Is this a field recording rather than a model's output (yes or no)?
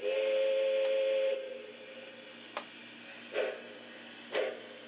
yes